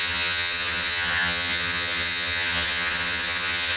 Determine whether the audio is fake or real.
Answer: fake